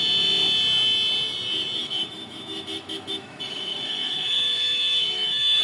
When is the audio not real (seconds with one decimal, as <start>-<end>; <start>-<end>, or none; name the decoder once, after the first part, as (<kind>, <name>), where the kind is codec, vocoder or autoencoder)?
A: 1.8-5.6 (autoencoder, DAC-VAE)